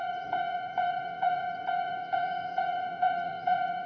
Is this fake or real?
fake